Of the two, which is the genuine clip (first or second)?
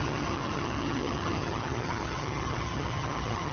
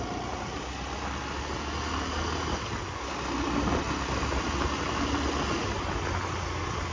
second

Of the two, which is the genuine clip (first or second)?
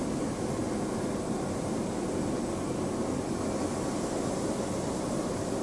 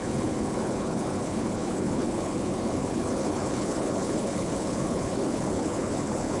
first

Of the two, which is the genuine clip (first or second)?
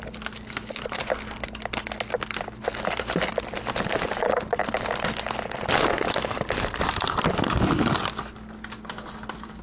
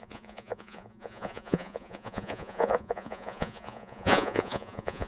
first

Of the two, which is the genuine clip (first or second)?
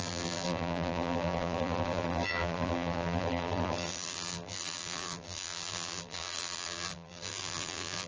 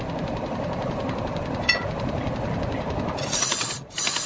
second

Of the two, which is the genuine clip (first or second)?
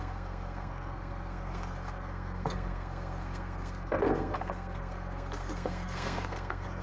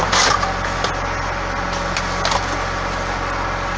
second